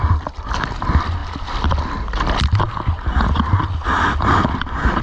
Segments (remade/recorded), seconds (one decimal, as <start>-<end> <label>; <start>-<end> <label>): 0.0-5.0 recorded